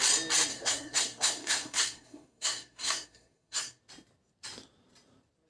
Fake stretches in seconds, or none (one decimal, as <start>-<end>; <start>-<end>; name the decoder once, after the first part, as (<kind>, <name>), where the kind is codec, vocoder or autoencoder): 0.5-3.8 (codec, SNAC)